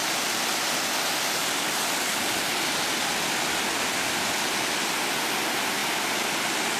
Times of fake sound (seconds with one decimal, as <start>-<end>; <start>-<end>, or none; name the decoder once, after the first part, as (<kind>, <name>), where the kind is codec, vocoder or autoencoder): none